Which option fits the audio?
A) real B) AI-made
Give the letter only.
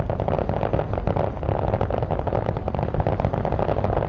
A